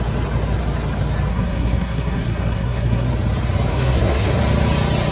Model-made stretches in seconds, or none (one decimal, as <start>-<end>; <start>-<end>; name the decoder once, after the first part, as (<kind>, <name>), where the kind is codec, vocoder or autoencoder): 1.3-3.1 (codec, SNAC); 3.7-4.4